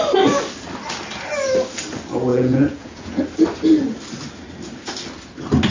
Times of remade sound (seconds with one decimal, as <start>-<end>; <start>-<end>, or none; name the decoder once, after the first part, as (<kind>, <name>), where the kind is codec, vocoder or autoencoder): 2.3-3.2 (vocoder, Vocos)